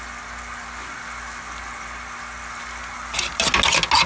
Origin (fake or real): real